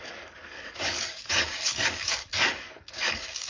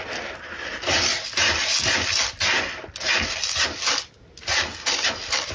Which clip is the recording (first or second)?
second